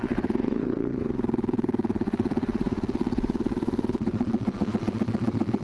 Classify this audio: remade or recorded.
remade